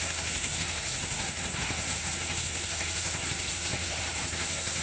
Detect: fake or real fake